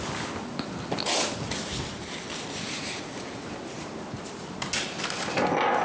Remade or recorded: recorded